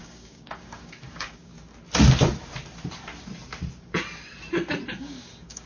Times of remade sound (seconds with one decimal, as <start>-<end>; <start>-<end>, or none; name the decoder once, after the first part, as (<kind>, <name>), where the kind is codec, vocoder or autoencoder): 0.0-1.5 (codec, DAC); 4.9-5.7